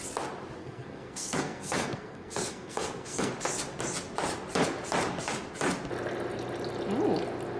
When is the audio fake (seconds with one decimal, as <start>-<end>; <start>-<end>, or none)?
0.6-3.3